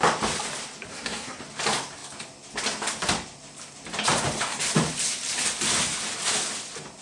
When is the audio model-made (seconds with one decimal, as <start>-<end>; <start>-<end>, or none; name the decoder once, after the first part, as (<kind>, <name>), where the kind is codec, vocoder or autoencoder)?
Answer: 0.9-1.4 (codec, SNAC)